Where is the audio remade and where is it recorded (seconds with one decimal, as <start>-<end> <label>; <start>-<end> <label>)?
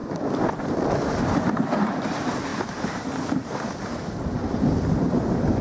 0.0-1.9 remade; 1.9-2.5 recorded; 2.5-4.1 remade; 4.1-5.6 recorded